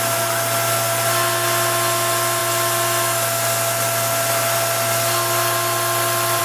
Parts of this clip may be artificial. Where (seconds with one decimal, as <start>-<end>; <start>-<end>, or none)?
none